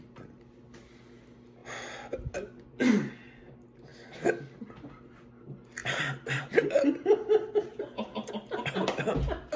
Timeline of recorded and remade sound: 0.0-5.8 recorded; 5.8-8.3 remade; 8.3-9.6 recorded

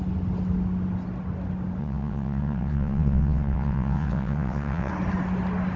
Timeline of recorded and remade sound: 0.0-1.8 recorded; 1.8-4.9 remade; 4.9-5.8 recorded

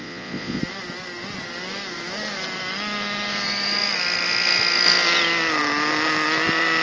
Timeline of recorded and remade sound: 0.0-0.6 remade; 0.6-6.8 recorded

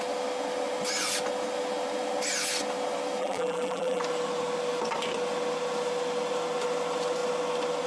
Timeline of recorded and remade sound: 0.0-3.2 recorded; 3.2-4.0 remade; 4.0-7.9 recorded

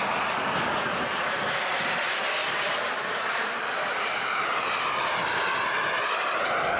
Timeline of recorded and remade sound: 0.0-2.4 recorded; 2.4-6.8 remade

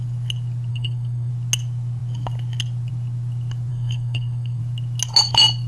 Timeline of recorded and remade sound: 0.0-0.7 recorded; 0.7-1.3 remade; 1.3-3.7 recorded; 3.7-4.6 remade; 4.6-5.7 recorded